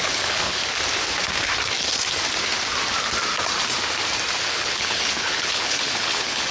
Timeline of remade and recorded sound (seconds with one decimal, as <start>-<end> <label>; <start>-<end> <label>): 0.0-0.6 remade; 0.6-4.5 recorded; 4.5-6.5 remade